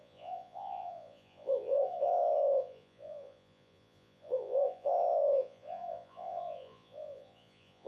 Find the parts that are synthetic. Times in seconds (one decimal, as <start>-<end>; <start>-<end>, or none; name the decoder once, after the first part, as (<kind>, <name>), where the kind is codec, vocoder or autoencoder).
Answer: 0.0-7.9 (vocoder, Vocos)